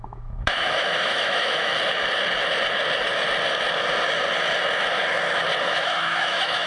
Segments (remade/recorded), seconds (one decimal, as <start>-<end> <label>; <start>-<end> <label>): 0.0-1.7 remade; 1.7-5.6 recorded; 5.6-6.7 remade